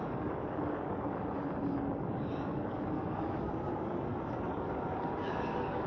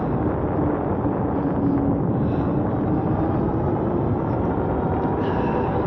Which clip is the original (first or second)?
second